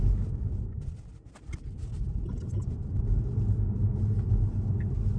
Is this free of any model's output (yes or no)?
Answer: yes